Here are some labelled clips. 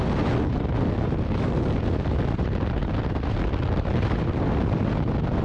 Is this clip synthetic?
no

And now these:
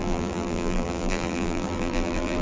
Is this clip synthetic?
yes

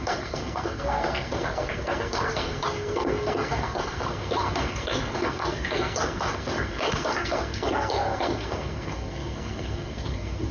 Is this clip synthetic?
yes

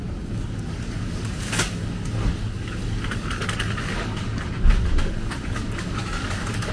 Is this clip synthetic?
yes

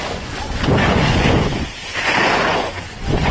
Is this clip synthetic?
yes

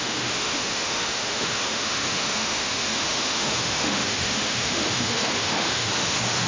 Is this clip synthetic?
yes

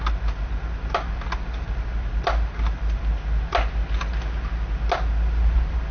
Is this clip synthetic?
no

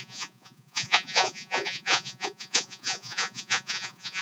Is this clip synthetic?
yes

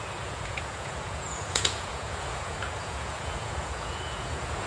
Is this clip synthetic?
yes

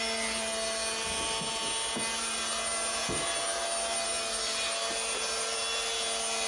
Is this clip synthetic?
no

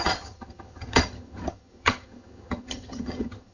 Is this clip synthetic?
yes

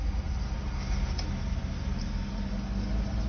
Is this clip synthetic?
no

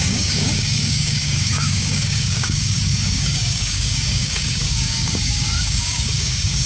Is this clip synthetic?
yes